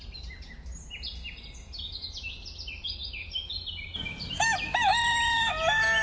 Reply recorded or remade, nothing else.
recorded